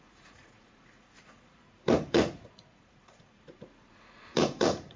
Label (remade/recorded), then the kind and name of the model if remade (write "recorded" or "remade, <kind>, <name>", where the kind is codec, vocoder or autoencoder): remade, vocoder, Vocos